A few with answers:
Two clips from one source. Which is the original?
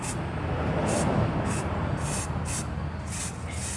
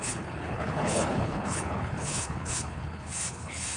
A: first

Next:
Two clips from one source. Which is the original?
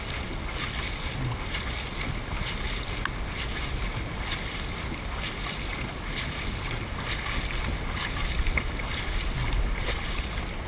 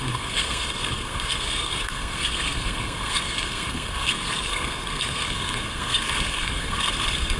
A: first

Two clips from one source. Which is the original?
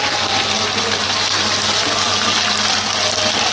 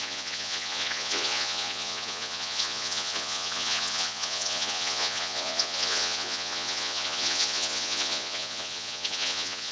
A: first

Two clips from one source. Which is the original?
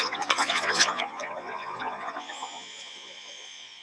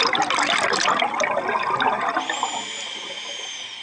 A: second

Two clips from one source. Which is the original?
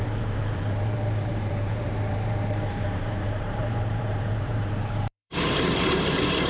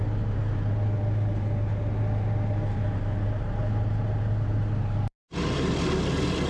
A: second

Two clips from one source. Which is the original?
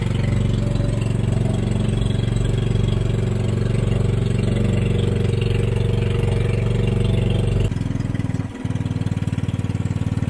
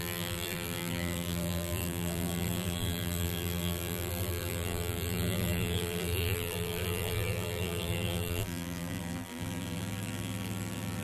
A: first